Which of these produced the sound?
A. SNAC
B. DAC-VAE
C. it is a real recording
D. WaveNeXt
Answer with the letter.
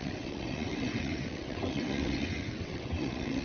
D